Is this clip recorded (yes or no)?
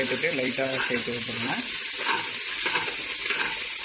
no